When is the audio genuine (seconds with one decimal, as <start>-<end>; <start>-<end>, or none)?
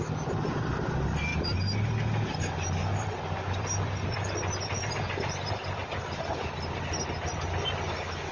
0.0-1.3; 1.9-2.8; 7.5-8.3